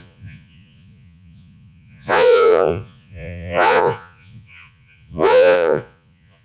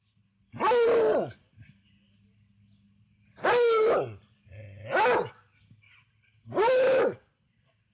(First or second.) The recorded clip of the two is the second